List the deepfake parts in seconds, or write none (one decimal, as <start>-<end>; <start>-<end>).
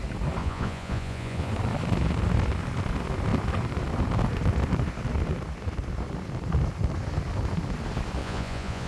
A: 0.4-1.5; 8.2-8.9